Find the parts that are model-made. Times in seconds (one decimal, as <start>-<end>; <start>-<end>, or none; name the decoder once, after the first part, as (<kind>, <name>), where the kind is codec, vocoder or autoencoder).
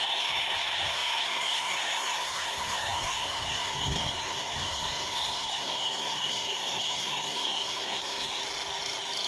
0.0-8.4 (codec, SNAC)